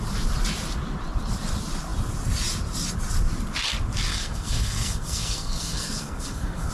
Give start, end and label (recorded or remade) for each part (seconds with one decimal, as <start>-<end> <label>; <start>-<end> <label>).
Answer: 0.0-4.1 recorded; 4.1-6.7 remade